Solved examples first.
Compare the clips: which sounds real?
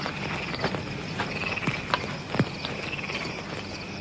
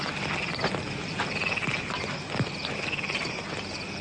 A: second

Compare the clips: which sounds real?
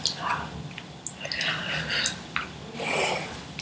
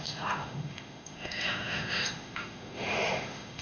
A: first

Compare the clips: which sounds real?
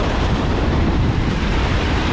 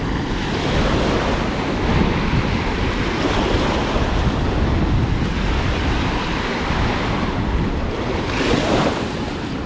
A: second